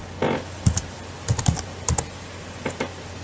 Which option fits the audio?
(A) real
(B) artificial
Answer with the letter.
A